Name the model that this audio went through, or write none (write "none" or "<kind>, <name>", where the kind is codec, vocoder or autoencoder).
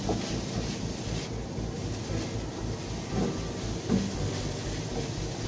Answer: none